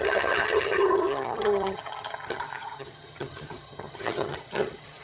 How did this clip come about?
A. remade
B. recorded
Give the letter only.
A